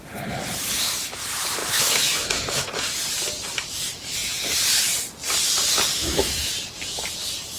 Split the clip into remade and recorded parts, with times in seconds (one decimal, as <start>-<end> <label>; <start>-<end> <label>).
0.0-1.6 recorded; 1.6-2.7 remade; 2.7-6.0 recorded; 6.0-6.5 remade; 6.5-7.6 recorded